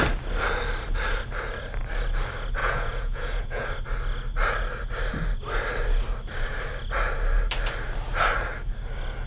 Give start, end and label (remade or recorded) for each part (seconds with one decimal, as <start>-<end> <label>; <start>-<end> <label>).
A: 0.0-2.6 recorded; 2.6-3.7 remade; 3.7-9.3 recorded